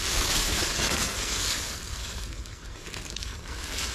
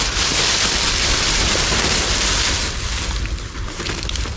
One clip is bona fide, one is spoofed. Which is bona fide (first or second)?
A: second